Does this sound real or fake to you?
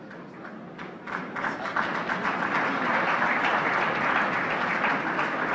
real